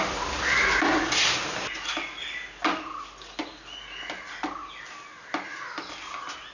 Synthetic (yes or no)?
no